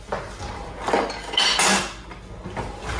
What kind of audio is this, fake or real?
real